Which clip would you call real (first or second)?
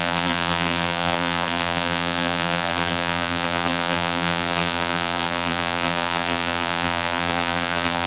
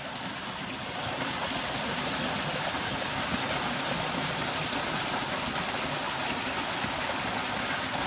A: second